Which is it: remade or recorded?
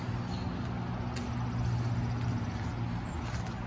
recorded